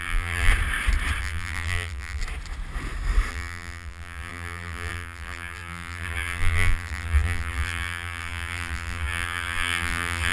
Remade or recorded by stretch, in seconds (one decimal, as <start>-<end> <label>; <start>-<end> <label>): 0.0-0.5 remade; 0.5-1.2 recorded; 1.2-2.2 remade; 2.2-3.3 recorded; 3.3-10.3 remade